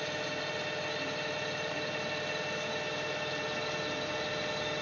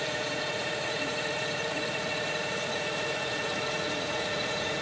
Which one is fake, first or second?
second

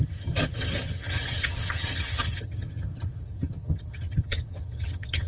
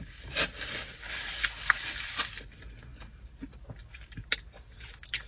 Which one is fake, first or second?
first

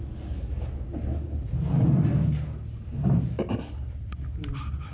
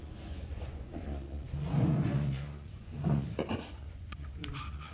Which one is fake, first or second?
second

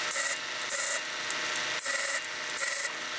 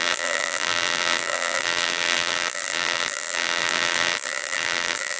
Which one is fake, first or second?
second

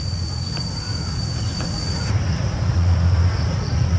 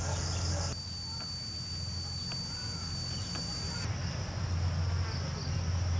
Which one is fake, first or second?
first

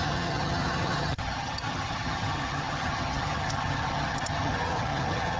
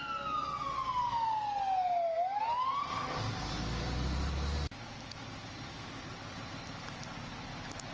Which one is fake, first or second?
first